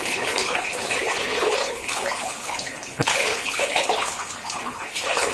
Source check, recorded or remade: remade